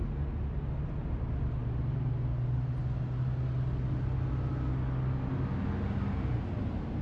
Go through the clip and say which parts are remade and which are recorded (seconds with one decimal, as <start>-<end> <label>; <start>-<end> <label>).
0.0-7.0 recorded